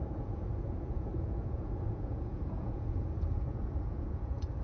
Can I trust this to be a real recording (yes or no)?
no